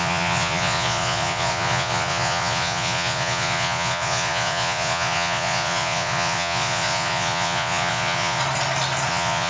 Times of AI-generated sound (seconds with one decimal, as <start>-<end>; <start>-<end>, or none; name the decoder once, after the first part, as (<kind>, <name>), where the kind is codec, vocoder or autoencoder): 0.0-8.4 (vocoder, Vocos); 9.1-9.5